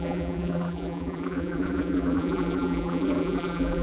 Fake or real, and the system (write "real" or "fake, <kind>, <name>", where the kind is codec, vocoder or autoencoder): fake, vocoder, BigVGAN v2